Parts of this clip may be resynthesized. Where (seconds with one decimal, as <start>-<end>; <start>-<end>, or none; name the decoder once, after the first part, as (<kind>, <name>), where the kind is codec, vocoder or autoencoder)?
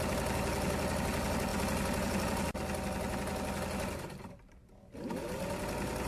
none